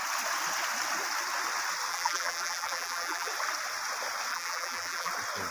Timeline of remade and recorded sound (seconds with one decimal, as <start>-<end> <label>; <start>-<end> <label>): 0.0-1.9 recorded; 1.9-3.3 remade; 3.3-4.3 recorded; 4.3-5.1 remade; 5.1-5.5 recorded